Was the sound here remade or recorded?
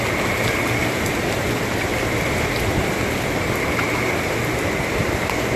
recorded